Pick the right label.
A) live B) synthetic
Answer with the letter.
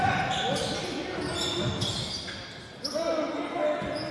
A